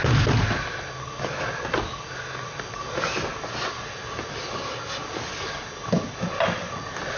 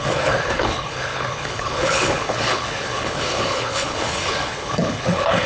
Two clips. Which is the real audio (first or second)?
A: first